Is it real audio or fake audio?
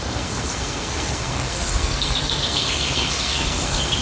fake